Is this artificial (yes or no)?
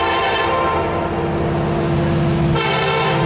no